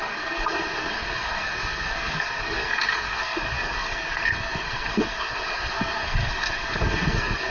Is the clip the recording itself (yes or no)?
no